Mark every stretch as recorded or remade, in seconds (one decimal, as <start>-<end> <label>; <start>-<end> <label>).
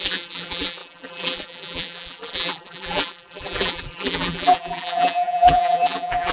0.0-6.3 remade